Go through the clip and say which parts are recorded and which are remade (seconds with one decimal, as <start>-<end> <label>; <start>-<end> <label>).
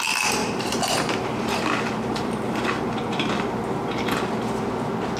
0.0-0.4 recorded; 0.4-3.5 remade; 3.5-5.2 recorded